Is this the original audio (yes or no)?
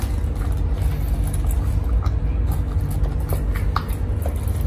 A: yes